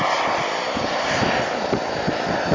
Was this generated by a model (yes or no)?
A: no